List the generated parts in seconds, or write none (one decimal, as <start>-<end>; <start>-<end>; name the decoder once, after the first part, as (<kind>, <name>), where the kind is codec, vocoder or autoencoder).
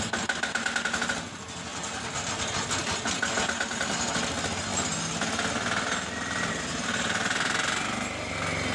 none